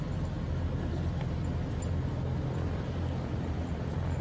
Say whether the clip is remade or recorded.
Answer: recorded